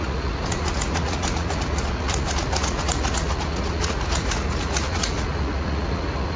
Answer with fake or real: fake